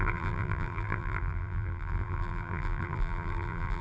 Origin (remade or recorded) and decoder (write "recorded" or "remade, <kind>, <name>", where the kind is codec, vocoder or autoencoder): remade, vocoder, BigVGAN v2